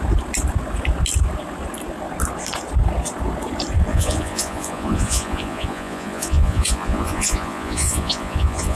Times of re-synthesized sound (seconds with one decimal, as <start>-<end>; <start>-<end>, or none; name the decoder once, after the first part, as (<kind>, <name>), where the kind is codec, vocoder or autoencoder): 3.9-8.8 (vocoder, Vocos)